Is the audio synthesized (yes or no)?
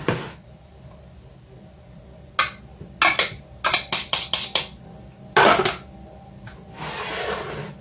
no